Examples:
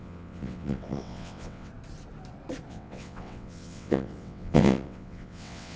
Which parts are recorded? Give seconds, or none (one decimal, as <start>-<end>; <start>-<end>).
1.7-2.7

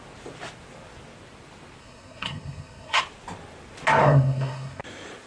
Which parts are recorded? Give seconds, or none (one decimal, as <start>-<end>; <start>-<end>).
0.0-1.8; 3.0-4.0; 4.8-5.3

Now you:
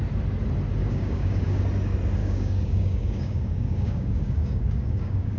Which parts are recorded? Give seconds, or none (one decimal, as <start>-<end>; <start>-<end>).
0.0-0.8; 1.6-2.2

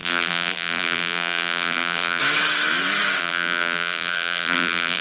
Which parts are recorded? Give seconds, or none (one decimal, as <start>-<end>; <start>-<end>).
2.2-3.2